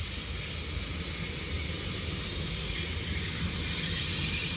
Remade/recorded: recorded